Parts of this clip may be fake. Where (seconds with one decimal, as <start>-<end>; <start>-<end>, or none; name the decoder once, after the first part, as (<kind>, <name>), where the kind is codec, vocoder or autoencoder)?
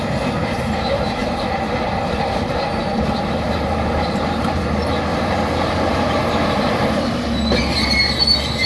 1.2-4.6 (vocoder, BigVGAN v2); 5.1-6.7